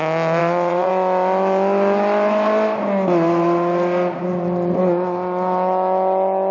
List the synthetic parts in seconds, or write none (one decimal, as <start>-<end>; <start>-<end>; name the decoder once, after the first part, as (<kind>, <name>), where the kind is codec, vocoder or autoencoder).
0.4-0.9 (vocoder, Vocos)